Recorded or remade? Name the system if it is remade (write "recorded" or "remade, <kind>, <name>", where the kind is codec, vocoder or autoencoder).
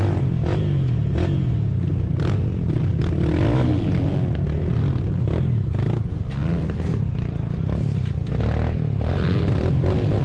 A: recorded